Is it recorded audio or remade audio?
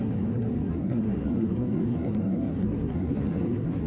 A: remade